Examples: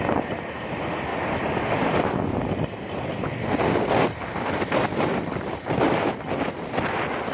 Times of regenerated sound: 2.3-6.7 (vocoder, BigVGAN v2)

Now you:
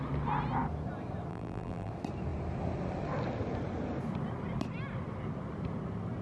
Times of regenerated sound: 1.3-1.9 (vocoder, BigVGAN v2)